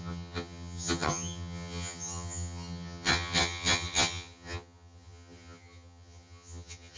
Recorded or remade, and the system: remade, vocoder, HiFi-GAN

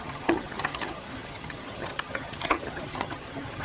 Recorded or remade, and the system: remade, vocoder, HiFi-GAN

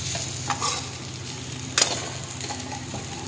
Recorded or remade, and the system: recorded